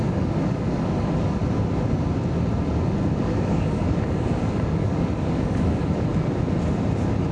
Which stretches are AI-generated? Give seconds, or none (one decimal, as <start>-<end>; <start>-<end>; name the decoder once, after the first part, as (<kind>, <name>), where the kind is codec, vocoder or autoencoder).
0.0-1.4 (codec, DAC); 2.7-6.1